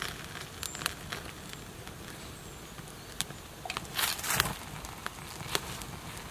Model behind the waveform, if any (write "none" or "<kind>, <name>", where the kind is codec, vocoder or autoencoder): none